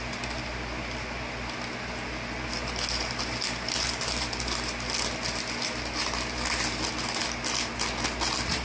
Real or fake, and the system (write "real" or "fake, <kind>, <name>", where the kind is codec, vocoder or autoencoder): real